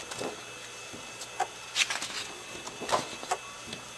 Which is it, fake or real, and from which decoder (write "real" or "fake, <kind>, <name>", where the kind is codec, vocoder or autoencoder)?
real